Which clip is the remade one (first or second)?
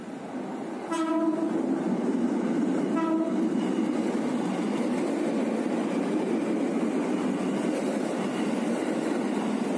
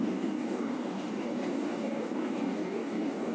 second